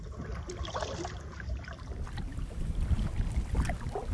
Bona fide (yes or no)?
yes